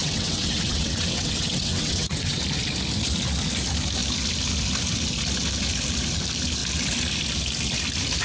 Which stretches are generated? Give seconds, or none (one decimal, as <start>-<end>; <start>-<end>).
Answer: 0.0-2.4